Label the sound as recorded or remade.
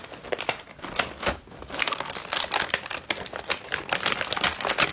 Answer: recorded